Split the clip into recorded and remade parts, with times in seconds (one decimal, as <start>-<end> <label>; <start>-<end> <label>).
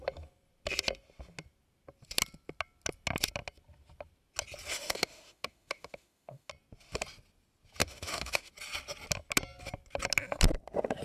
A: 0.0-4.7 recorded; 4.7-6.5 remade; 6.5-7.8 recorded; 7.8-8.5 remade; 8.5-11.0 recorded